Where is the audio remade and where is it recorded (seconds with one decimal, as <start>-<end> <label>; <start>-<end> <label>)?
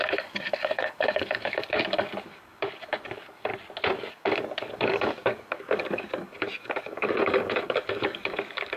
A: 0.0-3.5 remade; 3.5-4.1 recorded; 4.1-8.8 remade